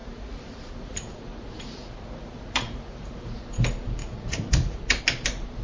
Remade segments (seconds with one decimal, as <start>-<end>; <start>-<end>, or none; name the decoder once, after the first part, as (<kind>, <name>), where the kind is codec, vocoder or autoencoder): 0.0-3.4 (vocoder, Vocos); 4.0-5.0